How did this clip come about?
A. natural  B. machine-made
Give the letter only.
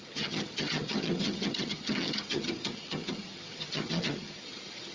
B